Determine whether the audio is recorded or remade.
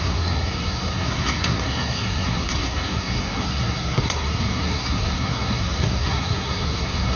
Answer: remade